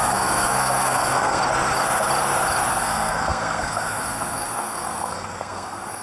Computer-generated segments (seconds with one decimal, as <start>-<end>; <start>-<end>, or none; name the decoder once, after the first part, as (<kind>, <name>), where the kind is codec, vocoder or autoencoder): 0.0-1.4 (codec, SNAC); 2.7-6.0